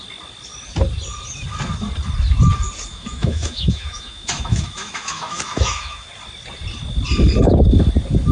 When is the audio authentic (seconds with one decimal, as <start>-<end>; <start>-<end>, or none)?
0.0-2.9; 6.1-8.3